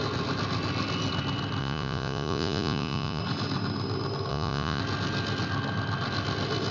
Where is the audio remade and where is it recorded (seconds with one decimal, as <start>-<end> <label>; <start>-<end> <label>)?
0.0-1.6 recorded; 1.6-3.2 remade; 3.2-4.3 recorded; 4.3-4.8 remade; 4.8-6.7 recorded